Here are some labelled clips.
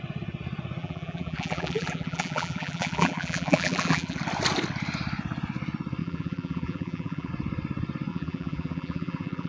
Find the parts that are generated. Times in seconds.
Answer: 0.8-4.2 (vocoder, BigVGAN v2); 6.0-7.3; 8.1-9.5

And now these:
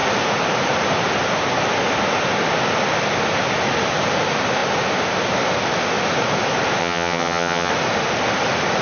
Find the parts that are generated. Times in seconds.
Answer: 6.8-7.7 (vocoder, HiFi-GAN)

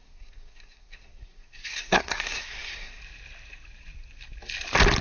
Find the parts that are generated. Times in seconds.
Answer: 0.0-3.0 (codec, SNAC)